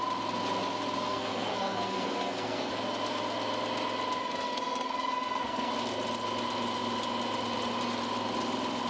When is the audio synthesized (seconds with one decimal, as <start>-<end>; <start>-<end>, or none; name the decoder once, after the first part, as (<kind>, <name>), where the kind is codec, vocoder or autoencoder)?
1.1-2.7 (codec, SNAC); 4.2-5.7